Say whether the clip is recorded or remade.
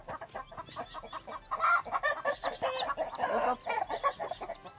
recorded